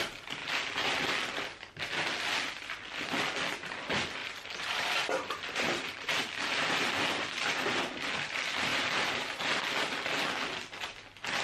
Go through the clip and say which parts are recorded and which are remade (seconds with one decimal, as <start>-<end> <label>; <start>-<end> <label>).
0.0-4.2 recorded; 4.2-7.8 remade; 7.8-8.7 recorded; 8.7-9.6 remade; 9.6-11.4 recorded